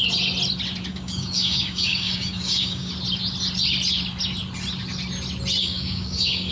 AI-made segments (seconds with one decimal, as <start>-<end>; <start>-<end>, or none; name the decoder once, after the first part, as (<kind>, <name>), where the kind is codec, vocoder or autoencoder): 0.9-2.9 (codec, DAC); 5.6-6.5